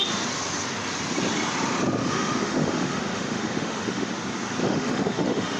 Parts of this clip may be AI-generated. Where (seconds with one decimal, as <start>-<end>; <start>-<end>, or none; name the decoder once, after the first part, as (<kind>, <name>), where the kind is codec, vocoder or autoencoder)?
2.0-4.1 (autoencoder, DAC-VAE); 4.6-5.6